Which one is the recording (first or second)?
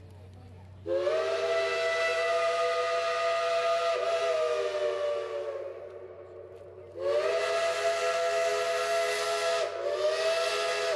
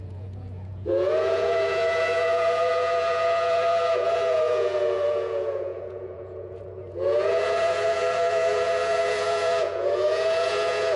first